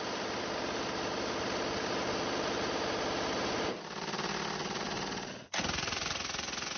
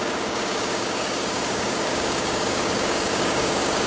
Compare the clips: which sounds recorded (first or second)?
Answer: first